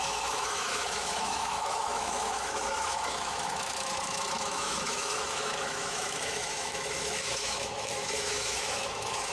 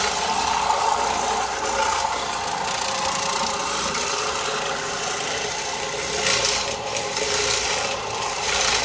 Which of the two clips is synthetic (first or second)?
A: first